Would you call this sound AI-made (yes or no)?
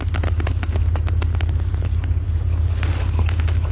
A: no